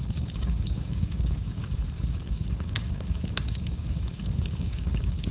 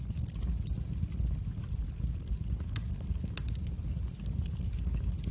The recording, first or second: second